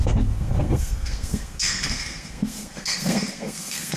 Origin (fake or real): fake